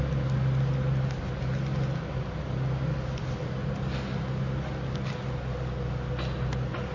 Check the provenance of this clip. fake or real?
real